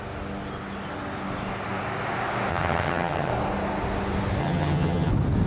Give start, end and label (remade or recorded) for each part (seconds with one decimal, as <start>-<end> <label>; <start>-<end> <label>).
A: 0.0-2.5 recorded; 2.5-3.3 remade; 3.3-4.4 recorded; 4.4-5.1 remade; 5.1-5.5 recorded

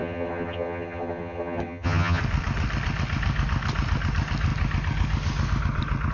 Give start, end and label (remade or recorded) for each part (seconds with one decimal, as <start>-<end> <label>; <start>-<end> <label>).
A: 0.0-2.2 remade; 2.2-6.1 recorded

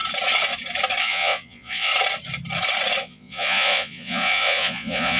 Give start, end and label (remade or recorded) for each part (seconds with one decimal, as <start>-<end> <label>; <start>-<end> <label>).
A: 0.0-1.0 recorded; 1.0-1.9 remade; 1.9-3.0 recorded; 3.0-5.2 remade

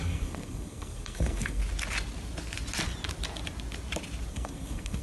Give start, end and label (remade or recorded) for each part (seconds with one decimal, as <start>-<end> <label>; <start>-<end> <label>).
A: 0.0-1.6 remade; 1.6-4.3 recorded; 4.3-5.0 remade

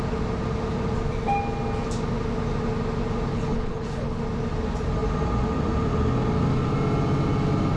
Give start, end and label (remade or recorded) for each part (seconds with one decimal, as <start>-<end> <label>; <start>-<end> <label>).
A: 0.0-3.3 recorded; 3.3-4.2 remade; 4.2-7.8 recorded

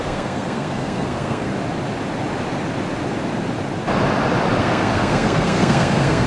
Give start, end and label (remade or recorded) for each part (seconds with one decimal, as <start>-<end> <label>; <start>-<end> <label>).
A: 0.0-1.5 remade; 1.5-4.6 recorded; 4.6-6.3 remade

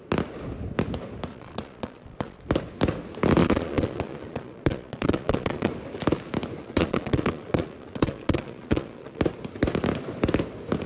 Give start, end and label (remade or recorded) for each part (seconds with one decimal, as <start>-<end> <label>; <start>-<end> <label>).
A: 0.0-1.3 recorded; 1.3-2.4 remade; 2.4-3.4 recorded; 3.4-5.7 remade; 5.7-6.6 recorded; 6.6-9.2 remade; 9.2-10.9 recorded